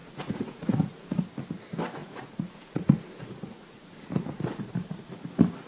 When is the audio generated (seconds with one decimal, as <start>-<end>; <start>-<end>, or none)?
0.0-1.2; 2.0-5.1